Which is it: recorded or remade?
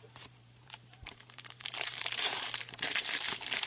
remade